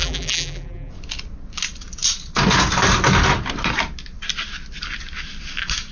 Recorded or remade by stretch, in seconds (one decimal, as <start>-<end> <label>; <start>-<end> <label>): 0.0-0.9 remade; 0.9-5.9 recorded